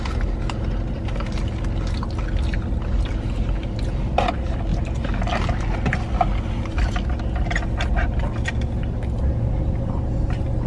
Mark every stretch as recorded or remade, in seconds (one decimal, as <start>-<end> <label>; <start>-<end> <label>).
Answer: 0.0-10.7 recorded